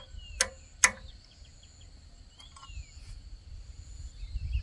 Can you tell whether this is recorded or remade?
recorded